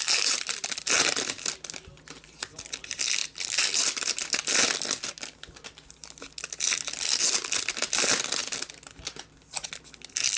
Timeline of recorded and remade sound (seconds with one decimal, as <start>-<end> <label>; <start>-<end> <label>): 0.0-10.4 recorded